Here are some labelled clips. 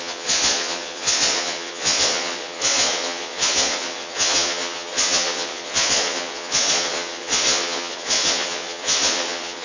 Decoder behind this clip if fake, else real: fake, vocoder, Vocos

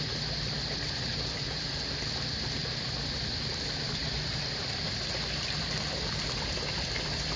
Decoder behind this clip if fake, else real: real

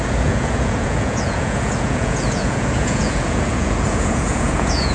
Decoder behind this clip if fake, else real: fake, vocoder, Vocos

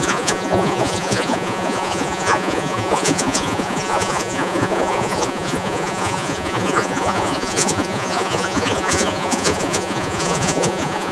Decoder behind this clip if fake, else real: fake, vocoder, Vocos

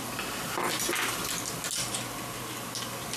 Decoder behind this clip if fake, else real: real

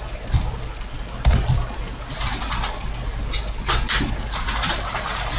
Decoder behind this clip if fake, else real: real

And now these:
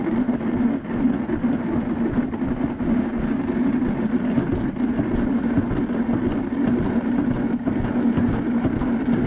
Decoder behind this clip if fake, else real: real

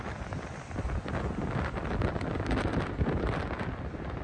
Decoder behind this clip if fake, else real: real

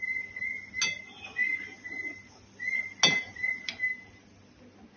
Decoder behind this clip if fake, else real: real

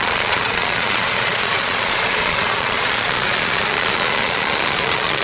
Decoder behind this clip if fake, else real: fake, vocoder, Vocos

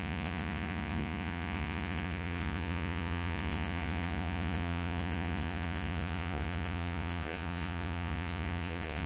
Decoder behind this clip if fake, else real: fake, vocoder, Vocos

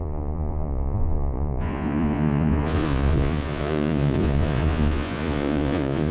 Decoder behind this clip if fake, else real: fake, vocoder, Vocos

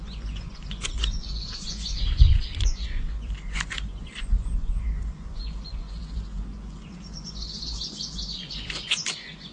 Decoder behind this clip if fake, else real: fake, vocoder, Vocos